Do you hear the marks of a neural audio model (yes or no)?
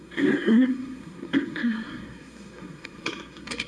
yes